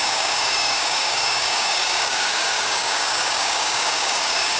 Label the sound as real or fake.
fake